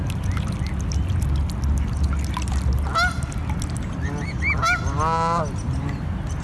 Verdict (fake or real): real